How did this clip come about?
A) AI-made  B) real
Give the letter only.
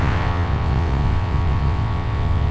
A